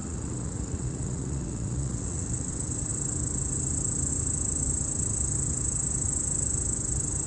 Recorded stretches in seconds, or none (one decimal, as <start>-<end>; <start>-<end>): 2.5-7.3